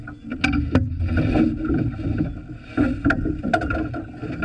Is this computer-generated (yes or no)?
no